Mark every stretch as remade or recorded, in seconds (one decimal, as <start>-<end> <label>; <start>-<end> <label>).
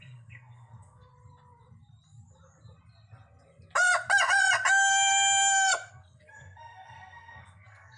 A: 0.0-1.1 remade; 1.1-5.9 recorded; 5.9-8.0 remade